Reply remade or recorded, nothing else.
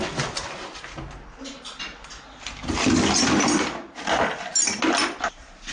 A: recorded